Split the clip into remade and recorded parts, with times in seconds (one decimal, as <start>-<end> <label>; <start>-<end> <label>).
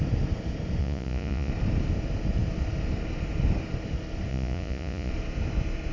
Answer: 0.0-0.8 recorded; 0.8-1.5 remade; 1.5-4.3 recorded; 4.3-5.1 remade; 5.1-5.9 recorded